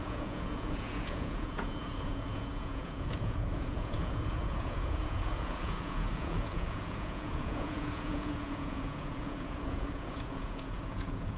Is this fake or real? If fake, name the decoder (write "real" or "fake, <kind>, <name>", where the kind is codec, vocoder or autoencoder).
fake, vocoder, Vocos